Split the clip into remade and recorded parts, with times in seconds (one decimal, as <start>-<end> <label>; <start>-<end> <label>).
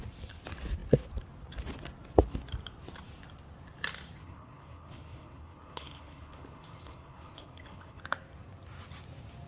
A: 0.0-4.2 recorded; 4.2-8.0 remade; 8.0-9.5 recorded